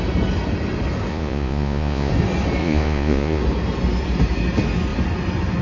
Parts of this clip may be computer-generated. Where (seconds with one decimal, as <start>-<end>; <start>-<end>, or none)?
1.1-2.1; 2.6-3.4

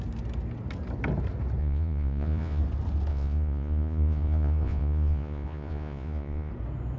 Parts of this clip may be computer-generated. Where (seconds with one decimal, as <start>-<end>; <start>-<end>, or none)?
1.6-2.6; 3.1-6.5

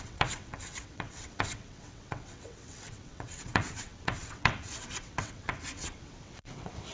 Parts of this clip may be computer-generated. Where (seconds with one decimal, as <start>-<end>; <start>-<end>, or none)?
0.0-6.9

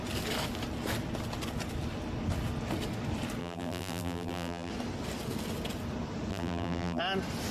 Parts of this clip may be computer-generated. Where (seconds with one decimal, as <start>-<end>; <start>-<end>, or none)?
3.4-4.7; 6.3-7.0

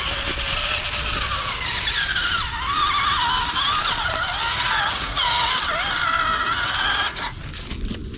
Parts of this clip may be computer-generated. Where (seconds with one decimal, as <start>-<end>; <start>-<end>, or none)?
4.5-5.5; 6.3-7.4

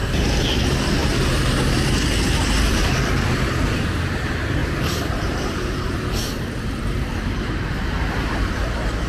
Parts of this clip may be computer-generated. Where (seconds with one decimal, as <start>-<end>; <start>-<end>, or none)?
0.0-0.6; 4.6-8.6